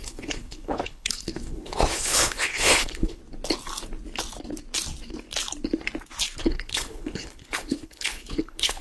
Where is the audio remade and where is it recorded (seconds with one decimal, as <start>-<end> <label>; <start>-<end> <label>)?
0.0-3.2 remade; 3.2-6.4 recorded; 6.4-8.8 remade